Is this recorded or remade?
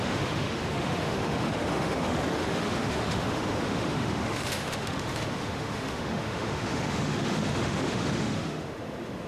remade